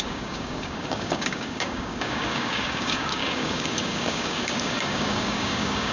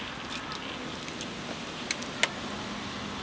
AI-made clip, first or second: first